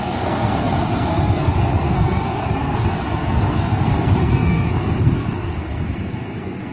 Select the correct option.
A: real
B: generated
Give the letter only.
B